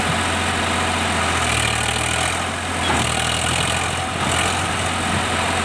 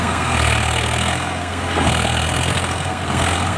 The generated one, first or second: second